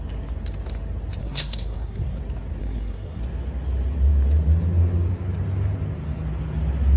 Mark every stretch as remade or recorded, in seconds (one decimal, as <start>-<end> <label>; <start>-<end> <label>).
0.0-1.2 recorded; 1.2-2.2 remade; 2.2-2.6 recorded; 2.6-3.2 remade; 3.2-7.0 recorded